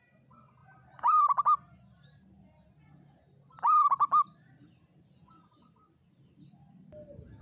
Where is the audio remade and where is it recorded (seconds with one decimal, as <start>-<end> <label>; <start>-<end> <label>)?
0.0-0.6 recorded; 0.6-1.4 remade; 1.4-7.4 recorded